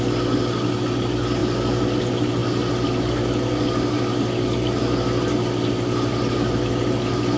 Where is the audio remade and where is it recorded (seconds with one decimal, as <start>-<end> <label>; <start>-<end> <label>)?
0.0-7.4 recorded

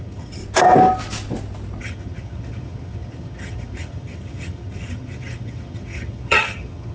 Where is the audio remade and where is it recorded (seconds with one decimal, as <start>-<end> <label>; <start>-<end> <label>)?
0.0-0.4 remade; 0.4-1.8 recorded; 1.8-6.9 remade